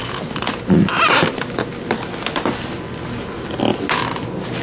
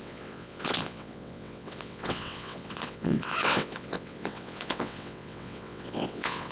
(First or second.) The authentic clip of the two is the first